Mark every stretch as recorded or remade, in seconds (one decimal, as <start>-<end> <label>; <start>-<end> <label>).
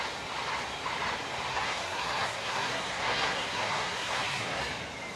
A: 0.0-1.5 recorded; 1.5-4.6 remade; 4.6-5.2 recorded